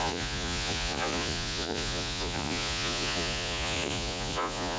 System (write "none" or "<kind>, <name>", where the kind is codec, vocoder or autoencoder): vocoder, Vocos